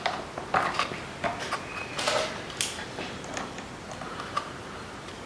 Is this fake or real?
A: real